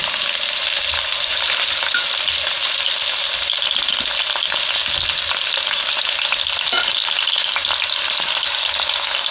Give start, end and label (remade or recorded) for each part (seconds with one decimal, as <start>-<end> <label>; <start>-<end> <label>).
0.0-9.3 recorded